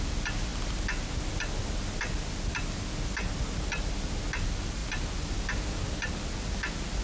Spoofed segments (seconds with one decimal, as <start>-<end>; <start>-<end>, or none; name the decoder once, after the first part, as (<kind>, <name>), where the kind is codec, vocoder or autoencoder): none